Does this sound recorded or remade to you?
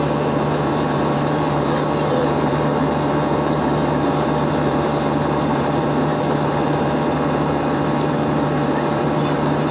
remade